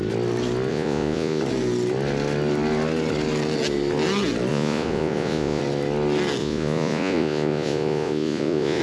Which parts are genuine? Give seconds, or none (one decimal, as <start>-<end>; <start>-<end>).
0.0-0.7; 1.4-4.5; 5.6-6.4